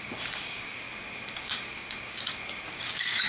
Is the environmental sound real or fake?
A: fake